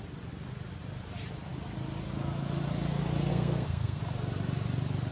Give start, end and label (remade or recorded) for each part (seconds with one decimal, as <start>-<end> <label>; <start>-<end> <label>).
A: 0.0-3.3 recorded; 3.3-4.0 remade; 4.0-5.1 recorded